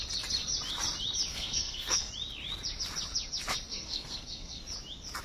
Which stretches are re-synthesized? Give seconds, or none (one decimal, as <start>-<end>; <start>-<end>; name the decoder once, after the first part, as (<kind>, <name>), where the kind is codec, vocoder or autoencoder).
1.3-2.1 (codec, SNAC); 3.7-4.6